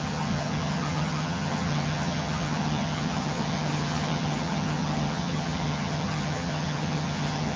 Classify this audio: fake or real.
fake